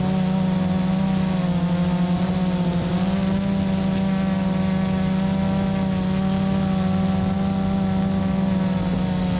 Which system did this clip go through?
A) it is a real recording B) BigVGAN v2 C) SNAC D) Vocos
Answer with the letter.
A